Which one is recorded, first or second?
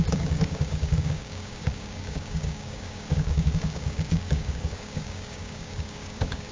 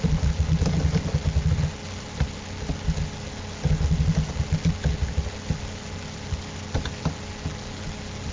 second